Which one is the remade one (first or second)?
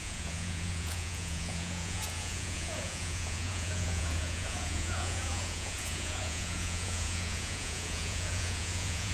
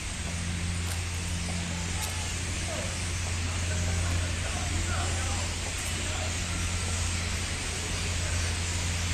first